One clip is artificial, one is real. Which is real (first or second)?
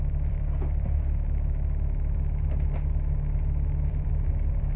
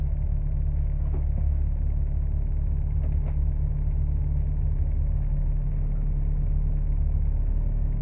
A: second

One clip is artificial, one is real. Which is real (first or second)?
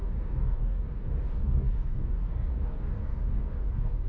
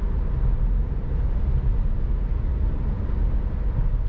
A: second